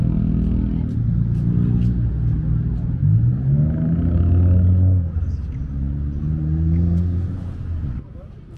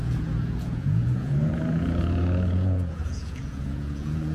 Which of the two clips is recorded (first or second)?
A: first